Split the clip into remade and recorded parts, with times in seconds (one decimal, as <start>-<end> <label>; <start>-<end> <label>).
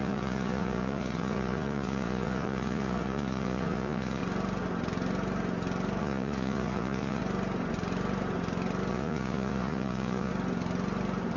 0.0-4.2 remade; 4.2-6.0 recorded; 6.0-7.2 remade; 7.2-8.9 recorded; 8.9-10.3 remade; 10.3-11.4 recorded